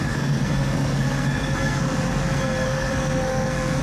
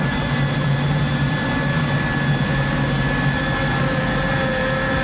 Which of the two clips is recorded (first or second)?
second